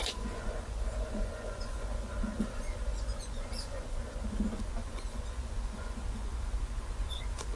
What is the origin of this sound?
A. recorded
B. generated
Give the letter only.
B